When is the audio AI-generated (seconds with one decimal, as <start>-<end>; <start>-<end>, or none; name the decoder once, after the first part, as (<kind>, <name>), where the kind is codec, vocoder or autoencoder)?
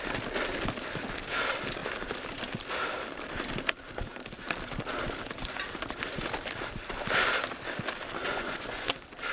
8.2-8.9 (vocoder, Vocos)